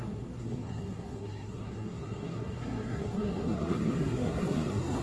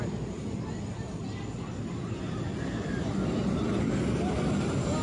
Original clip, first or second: second